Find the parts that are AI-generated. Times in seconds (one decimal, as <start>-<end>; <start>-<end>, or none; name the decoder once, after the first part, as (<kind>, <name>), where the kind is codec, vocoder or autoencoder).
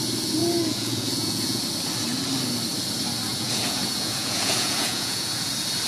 0.4-1.6 (vocoder, Vocos); 3.3-5.5